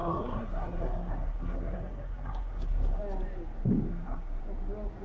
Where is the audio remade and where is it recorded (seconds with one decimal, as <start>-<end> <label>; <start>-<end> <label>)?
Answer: 0.0-3.0 remade; 3.0-3.9 recorded; 3.9-4.4 remade; 4.4-5.0 recorded